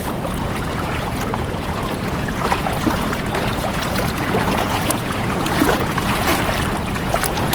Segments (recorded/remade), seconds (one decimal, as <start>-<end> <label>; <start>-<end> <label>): 0.0-6.3 remade; 6.3-6.9 recorded; 6.9-7.5 remade